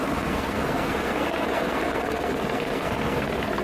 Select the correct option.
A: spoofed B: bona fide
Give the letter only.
A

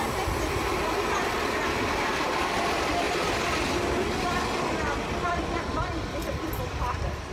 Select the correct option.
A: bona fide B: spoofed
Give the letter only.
A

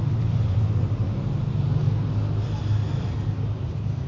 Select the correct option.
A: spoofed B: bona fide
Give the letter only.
B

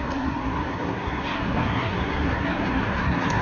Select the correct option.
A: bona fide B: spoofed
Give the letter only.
B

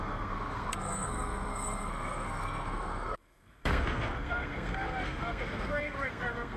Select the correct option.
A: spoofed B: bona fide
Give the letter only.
A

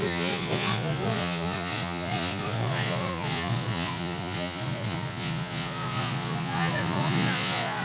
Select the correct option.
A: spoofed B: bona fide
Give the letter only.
A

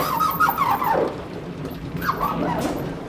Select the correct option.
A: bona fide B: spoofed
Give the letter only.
A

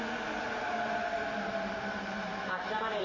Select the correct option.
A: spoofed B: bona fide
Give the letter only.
B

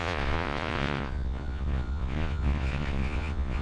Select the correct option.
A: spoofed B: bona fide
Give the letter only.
A